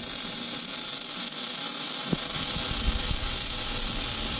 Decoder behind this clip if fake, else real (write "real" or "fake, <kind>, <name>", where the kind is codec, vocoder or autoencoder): real